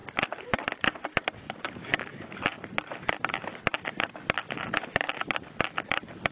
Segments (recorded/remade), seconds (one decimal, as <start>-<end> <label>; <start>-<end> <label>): 0.0-6.3 recorded